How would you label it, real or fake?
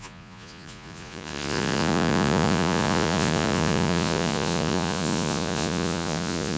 fake